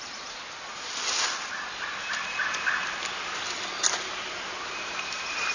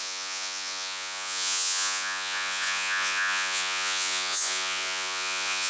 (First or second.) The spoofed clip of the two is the second